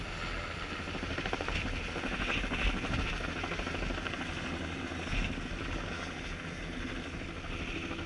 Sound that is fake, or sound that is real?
real